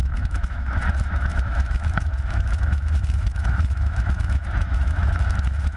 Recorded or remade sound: remade